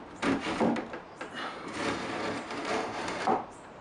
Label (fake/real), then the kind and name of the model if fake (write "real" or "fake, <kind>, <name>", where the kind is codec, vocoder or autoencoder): fake, vocoder, BigVGAN v2